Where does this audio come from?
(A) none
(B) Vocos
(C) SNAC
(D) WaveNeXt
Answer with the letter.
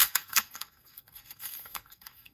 C